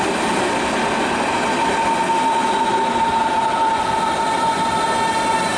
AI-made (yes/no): no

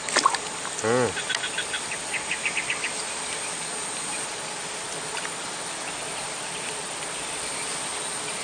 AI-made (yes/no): no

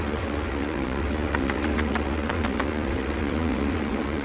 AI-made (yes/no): yes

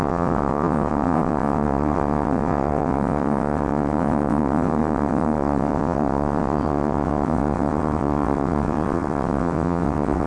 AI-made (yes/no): yes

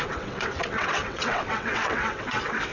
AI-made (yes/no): yes